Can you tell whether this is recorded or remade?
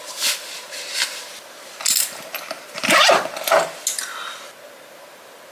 recorded